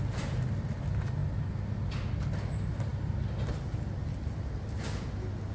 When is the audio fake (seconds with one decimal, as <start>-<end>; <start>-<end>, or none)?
none